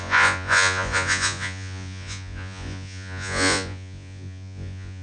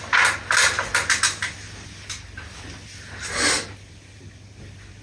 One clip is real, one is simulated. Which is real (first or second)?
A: second